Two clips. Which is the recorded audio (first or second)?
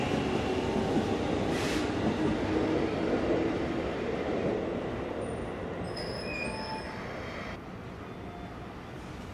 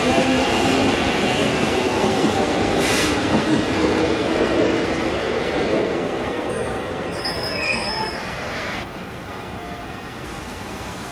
first